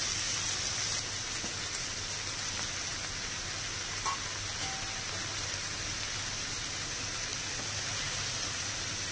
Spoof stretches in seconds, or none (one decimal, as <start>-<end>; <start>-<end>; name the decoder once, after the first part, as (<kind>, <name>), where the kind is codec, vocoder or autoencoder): none